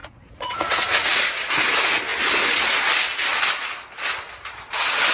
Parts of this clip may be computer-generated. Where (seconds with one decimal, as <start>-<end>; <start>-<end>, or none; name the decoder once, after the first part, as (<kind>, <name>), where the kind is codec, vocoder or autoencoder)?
0.0-1.5 (vocoder, Vocos)